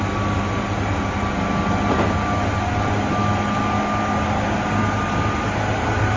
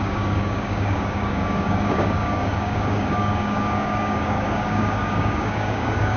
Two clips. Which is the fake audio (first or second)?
second